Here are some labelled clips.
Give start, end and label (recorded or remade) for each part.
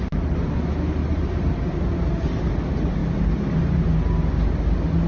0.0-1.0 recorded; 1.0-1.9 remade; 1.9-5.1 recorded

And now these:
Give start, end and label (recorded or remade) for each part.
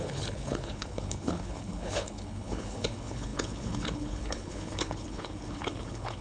0.0-6.2 remade